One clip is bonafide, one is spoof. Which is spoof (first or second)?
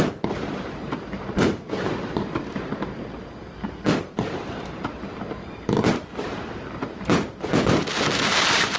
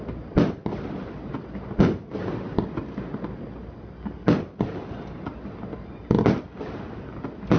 first